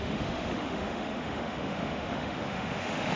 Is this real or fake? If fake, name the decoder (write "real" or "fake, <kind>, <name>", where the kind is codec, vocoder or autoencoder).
fake, autoencoder, DAC-VAE